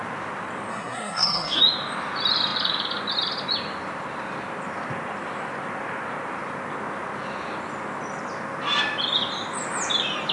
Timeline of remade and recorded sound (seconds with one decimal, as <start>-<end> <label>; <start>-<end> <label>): 0.0-0.7 recorded; 0.7-1.6 remade; 1.6-10.3 recorded